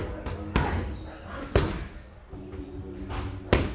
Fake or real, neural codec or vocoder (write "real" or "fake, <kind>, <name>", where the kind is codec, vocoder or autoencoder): real